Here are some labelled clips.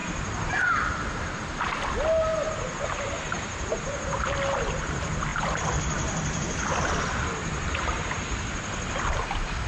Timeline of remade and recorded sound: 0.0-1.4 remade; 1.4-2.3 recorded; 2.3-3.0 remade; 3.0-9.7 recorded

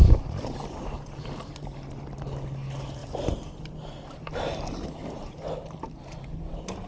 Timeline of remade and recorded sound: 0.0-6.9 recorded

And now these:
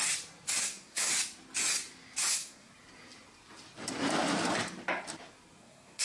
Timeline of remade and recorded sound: 0.0-0.6 recorded; 0.6-1.1 remade; 1.1-2.3 recorded; 2.3-2.7 remade; 2.7-5.6 recorded; 5.6-6.0 remade